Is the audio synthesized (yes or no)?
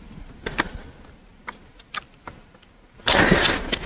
no